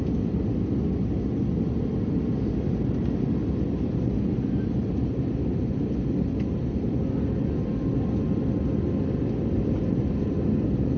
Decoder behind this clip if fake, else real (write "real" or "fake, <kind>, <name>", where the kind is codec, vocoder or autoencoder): real